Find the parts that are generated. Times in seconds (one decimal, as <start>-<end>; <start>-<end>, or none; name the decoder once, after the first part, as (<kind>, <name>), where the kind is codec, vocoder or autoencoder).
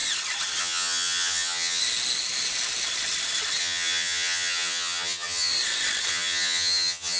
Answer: 0.6-1.8 (vocoder, HiFi-GAN); 3.6-5.5; 6.1-7.2